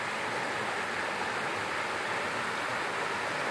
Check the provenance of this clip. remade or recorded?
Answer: recorded